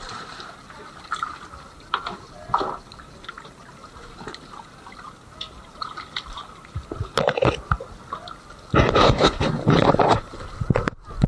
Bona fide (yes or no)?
yes